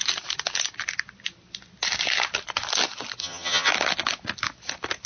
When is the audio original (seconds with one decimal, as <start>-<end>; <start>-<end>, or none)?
0.0-3.2; 3.7-5.1